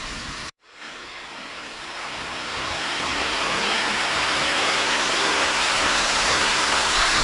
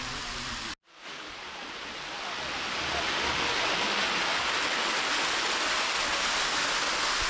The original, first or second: second